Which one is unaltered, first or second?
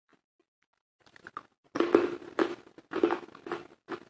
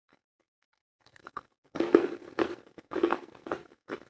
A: first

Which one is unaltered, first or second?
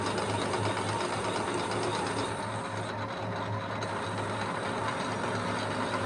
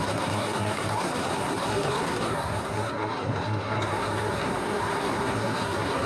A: first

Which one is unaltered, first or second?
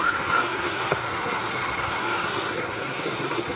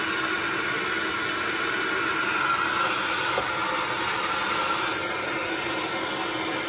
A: second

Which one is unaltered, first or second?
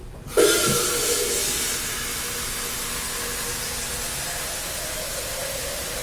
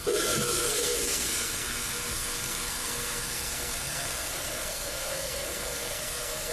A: first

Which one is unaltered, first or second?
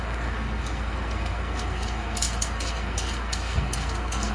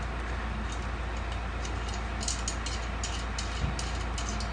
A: second